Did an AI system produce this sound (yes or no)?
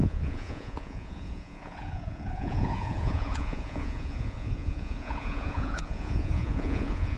yes